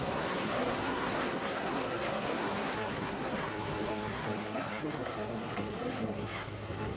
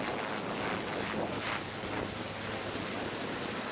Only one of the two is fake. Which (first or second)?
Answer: first